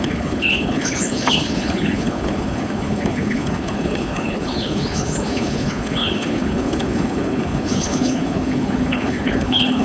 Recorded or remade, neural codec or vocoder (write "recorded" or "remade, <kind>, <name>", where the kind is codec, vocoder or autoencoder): remade, codec, HILCodec